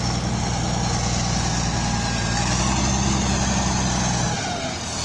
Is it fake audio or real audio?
real